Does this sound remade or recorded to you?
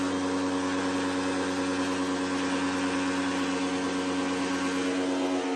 recorded